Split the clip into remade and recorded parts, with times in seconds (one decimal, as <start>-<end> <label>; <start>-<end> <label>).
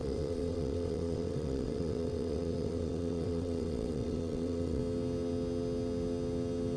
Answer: 0.0-4.8 remade; 4.8-6.8 recorded